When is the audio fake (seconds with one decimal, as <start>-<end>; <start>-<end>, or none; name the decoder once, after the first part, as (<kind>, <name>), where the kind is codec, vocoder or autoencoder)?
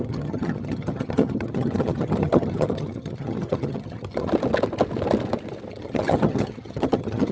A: 0.0-4.3 (vocoder, HiFi-GAN); 5.7-7.3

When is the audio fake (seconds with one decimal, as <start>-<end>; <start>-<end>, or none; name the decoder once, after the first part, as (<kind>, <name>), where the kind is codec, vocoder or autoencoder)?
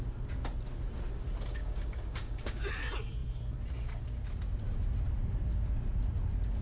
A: 1.6-2.7 (codec, DAC)